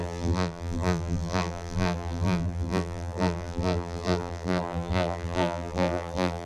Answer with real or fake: fake